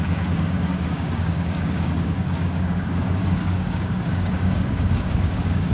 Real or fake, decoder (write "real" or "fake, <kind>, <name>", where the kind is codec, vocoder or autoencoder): fake, codec, DAC